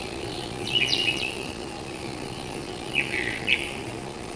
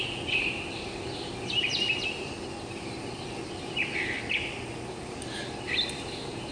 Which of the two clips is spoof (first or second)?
first